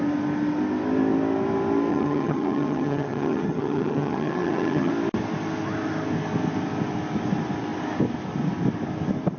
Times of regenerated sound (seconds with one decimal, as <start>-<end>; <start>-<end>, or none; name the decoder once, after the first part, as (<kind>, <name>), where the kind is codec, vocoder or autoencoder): 1.9-4.9 (vocoder, HiFi-GAN)